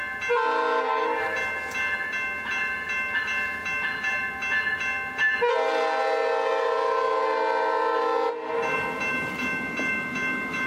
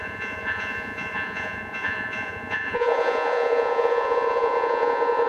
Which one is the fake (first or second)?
second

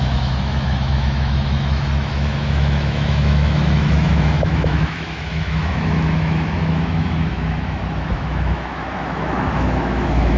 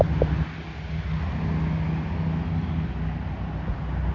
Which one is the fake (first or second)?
first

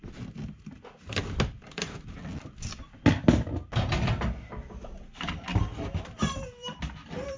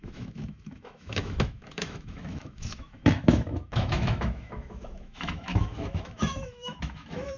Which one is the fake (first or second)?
second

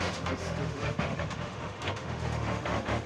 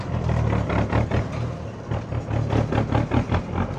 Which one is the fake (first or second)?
first